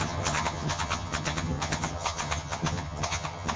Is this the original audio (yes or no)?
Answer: no